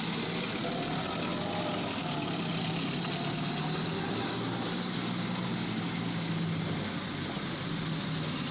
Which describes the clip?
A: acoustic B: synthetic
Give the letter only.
A